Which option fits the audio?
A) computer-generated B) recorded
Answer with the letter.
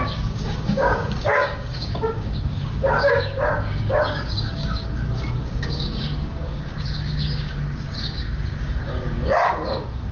A